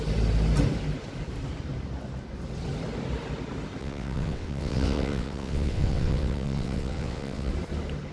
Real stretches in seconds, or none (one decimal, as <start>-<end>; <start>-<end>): 0.0-3.8; 7.5-8.1